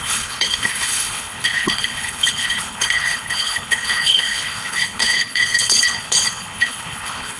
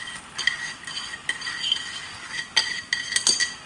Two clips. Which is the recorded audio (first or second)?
second